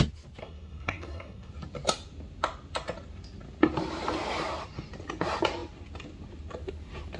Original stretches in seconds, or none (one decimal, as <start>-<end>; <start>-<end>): 0.0-0.4; 1.5-7.2